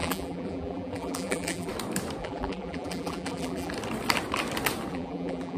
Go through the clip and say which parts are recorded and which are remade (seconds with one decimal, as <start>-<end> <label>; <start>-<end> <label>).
0.0-1.7 remade; 1.7-2.2 recorded; 2.2-3.7 remade; 3.7-4.9 recorded; 4.9-5.6 remade